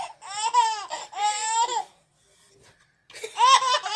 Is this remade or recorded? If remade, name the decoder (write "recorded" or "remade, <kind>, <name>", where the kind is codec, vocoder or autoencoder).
recorded